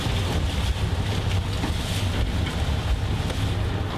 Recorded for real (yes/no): yes